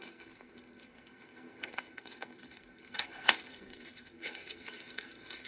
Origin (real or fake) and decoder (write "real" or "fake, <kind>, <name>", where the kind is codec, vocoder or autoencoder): fake, codec, SNAC